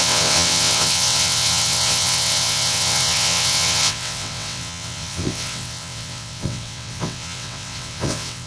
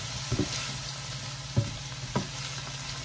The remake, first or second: first